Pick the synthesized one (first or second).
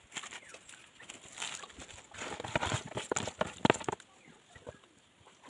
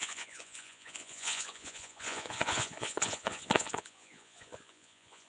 second